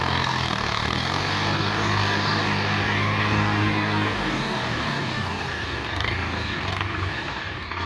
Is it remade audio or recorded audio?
remade